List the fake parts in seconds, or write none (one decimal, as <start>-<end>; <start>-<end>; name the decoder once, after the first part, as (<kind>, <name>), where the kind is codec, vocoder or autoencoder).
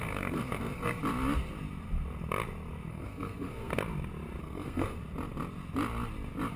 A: 0.0-1.0 (codec, SNAC); 2.9-3.7; 4.4-5.0